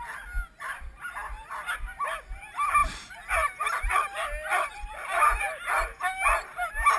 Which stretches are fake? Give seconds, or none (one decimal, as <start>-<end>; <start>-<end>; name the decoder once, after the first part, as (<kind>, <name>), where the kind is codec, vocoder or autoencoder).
none